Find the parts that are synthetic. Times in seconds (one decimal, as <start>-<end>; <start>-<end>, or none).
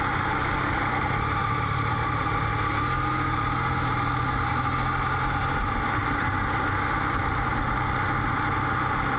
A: 1.4-2.5